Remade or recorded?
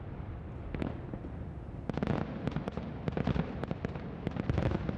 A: recorded